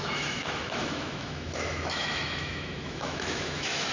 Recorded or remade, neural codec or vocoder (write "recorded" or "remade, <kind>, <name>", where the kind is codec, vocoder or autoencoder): remade, autoencoder, DAC-VAE